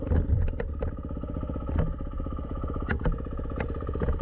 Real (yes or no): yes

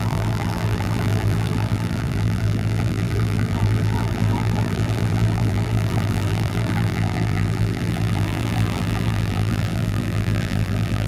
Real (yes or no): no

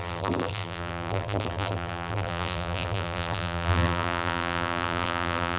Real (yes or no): no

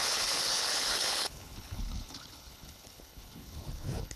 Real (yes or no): no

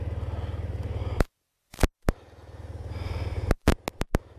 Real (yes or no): yes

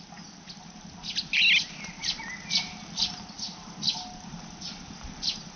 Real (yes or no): yes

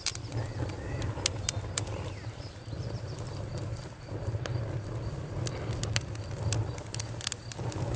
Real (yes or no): yes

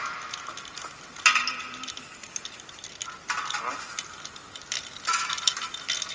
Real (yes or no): yes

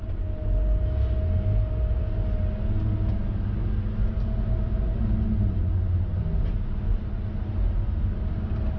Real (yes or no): yes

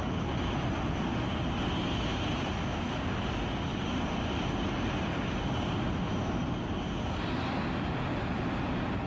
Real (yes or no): yes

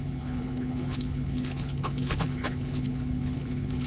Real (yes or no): no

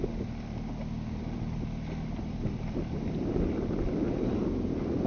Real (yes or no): yes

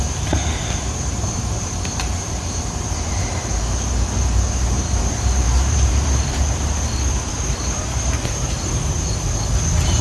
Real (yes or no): no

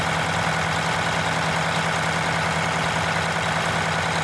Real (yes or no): yes